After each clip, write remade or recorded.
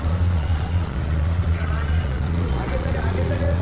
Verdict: remade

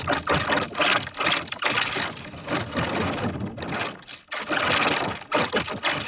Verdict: recorded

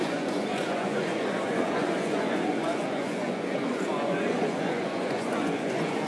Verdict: remade